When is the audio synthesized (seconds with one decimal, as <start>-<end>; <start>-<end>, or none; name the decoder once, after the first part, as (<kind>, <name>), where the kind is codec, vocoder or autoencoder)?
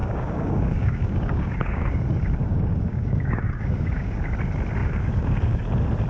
0.0-2.0 (codec, DAC); 2.4-4.2; 4.8-5.6